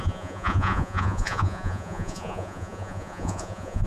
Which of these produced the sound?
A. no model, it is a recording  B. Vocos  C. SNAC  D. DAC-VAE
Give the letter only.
B